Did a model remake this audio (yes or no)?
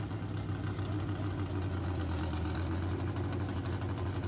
no